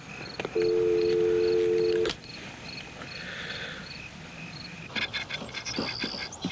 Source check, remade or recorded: recorded